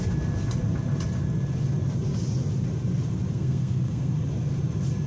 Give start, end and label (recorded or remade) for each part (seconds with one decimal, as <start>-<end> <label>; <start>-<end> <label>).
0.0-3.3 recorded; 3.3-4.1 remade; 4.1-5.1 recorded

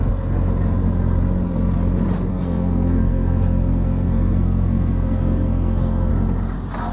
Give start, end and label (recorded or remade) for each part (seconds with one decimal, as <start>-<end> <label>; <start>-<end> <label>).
0.0-2.3 recorded; 2.3-6.1 remade; 6.1-6.9 recorded

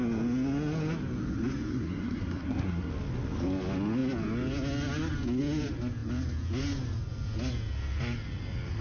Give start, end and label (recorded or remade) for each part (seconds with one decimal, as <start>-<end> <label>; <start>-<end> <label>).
0.0-1.7 recorded; 1.7-2.9 remade; 2.9-8.8 recorded

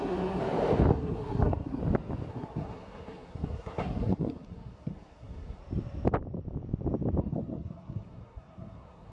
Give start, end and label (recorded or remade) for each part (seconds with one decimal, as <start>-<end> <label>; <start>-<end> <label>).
0.0-0.4 remade; 0.4-0.9 recorded; 0.9-1.8 remade; 1.8-2.3 recorded; 2.3-5.6 remade; 5.6-7.2 recorded; 7.2-9.1 remade

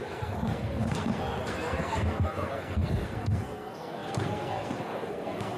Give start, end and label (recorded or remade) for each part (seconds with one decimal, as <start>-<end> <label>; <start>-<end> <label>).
0.0-5.6 remade

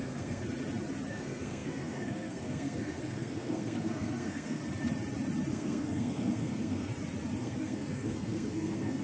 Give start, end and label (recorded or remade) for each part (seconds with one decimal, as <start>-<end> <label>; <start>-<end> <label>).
0.0-0.4 remade; 0.4-1.1 recorded; 1.1-4.6 remade; 4.6-5.5 recorded; 5.5-6.9 remade; 6.9-7.4 recorded; 7.4-9.0 remade

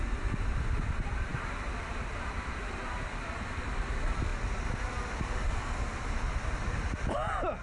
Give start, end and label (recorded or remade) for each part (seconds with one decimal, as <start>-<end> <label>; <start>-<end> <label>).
0.0-7.6 recorded

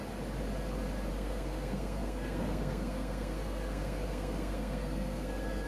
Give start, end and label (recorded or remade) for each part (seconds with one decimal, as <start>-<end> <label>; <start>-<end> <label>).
0.0-1.1 recorded; 1.1-5.7 remade